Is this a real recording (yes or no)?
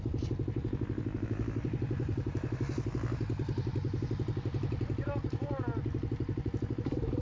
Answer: yes